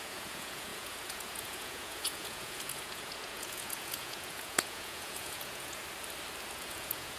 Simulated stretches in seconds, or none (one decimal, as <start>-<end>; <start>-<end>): 0.0-5.8; 6.5-7.2